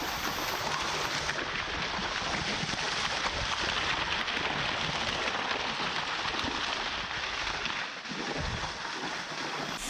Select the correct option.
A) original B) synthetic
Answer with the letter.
A